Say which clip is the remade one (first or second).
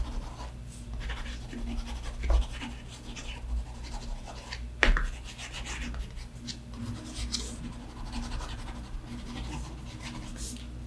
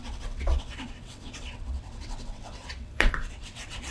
second